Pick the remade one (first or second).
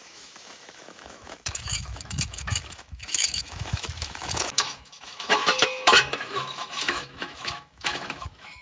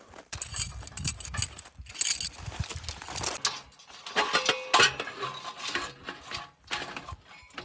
first